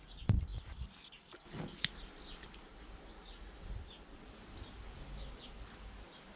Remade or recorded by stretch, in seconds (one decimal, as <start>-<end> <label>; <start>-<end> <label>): 0.0-3.1 recorded; 3.1-3.6 remade; 3.6-6.4 recorded